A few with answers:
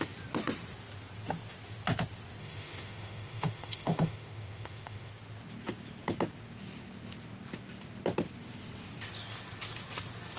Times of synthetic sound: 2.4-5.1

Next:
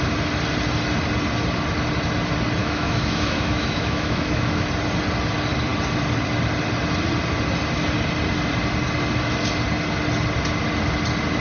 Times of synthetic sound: 2.6-4.7

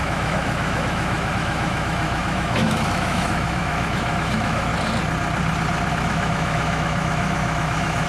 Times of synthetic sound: 0.0-4.7; 5.9-8.1

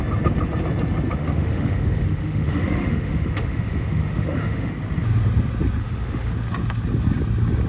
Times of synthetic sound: 1.2-4.7; 5.8-6.3